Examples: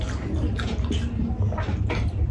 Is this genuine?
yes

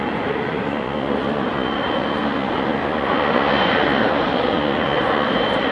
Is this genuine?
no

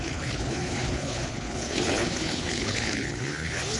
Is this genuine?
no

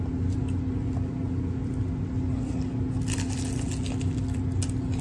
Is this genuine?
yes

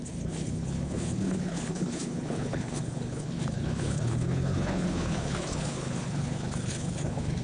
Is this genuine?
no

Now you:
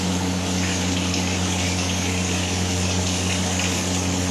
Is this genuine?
no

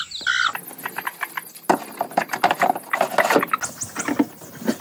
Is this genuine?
yes